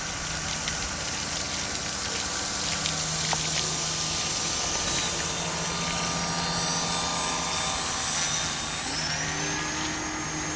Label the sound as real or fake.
real